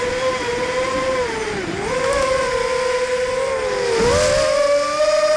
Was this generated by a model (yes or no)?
no